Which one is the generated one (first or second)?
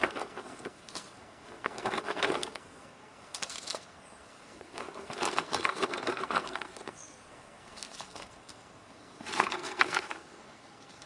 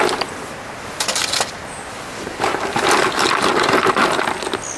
first